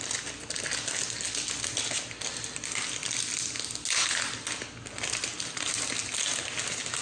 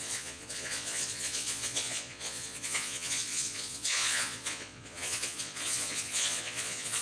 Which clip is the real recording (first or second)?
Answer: first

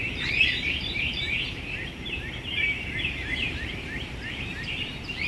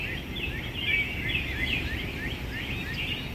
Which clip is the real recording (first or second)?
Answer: second